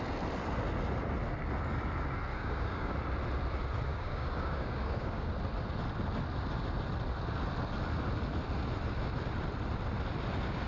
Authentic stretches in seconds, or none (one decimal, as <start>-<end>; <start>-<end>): 0.0-2.3; 2.9-3.9; 5.3-10.7